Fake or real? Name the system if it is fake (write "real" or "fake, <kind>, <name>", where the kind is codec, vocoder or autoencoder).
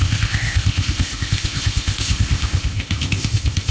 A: fake, codec, ZipCodec